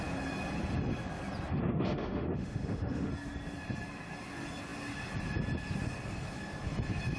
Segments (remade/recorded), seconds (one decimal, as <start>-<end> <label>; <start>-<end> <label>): 0.0-1.5 recorded; 1.5-3.1 remade; 3.1-7.2 recorded